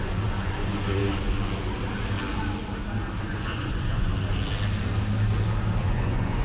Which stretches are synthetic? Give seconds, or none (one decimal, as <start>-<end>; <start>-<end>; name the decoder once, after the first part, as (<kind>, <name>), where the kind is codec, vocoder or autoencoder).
0.0-1.0 (vocoder, Vocos); 3.2-4.1; 5.8-6.4